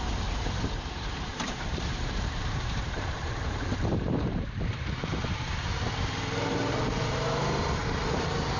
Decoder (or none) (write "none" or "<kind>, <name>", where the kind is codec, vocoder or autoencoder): vocoder, BigVGAN v2